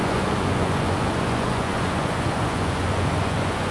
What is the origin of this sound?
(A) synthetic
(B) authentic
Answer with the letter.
A